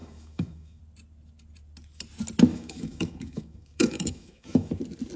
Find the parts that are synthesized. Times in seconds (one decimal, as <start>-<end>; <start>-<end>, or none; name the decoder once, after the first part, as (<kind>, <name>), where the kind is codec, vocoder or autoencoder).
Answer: 0.0-0.8 (autoencoder, DAC-VAE); 2.5-4.7